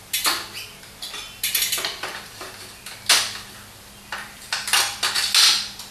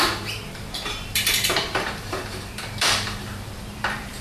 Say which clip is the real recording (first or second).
first